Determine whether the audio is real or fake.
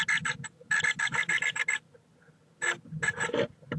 real